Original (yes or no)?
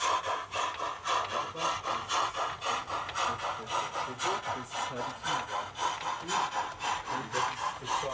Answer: yes